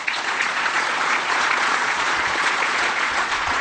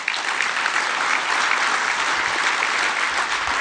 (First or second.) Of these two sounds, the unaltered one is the second